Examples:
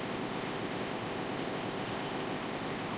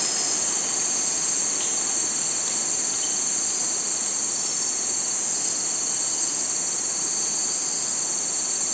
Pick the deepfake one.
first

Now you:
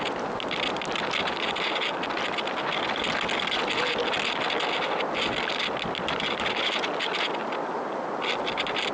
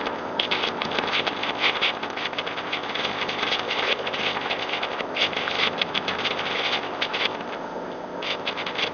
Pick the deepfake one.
second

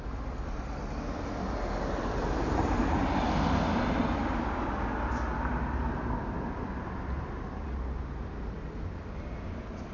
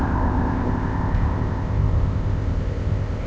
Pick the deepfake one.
second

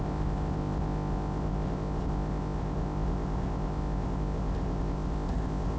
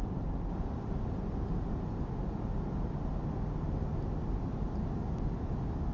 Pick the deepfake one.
first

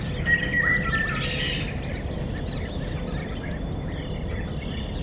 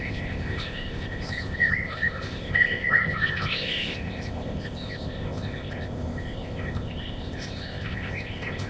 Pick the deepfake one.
second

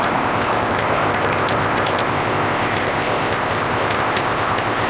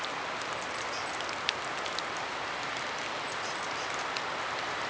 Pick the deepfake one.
first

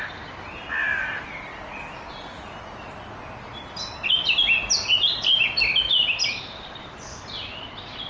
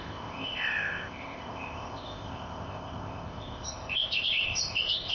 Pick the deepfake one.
second